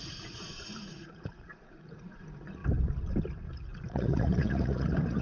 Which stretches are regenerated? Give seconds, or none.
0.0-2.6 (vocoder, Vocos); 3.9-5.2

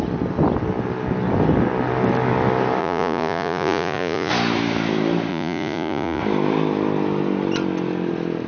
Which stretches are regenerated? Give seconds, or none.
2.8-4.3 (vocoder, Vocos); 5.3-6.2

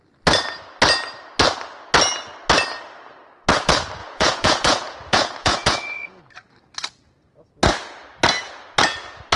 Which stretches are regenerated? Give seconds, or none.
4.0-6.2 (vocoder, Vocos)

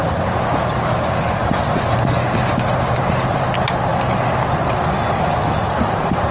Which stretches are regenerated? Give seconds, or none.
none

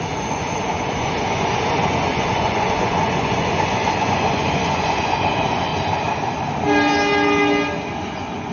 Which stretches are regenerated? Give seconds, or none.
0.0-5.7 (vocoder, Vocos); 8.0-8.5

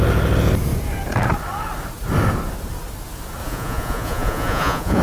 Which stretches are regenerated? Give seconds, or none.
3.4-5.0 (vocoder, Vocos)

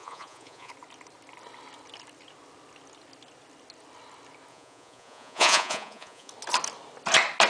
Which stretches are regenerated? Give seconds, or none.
0.0-0.7 (vocoder, Vocos); 4.5-6.3